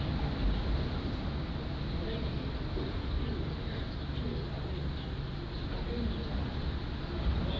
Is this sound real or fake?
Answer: real